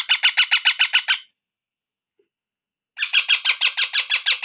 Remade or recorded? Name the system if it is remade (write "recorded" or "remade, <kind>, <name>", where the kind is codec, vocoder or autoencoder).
recorded